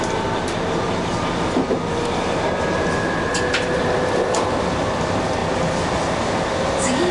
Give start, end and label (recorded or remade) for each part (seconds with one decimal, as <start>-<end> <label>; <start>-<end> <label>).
0.0-7.1 recorded